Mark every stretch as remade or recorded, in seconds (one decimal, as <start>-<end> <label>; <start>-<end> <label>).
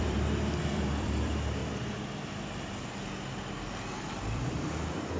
0.0-1.6 remade; 1.6-4.2 recorded; 4.2-5.2 remade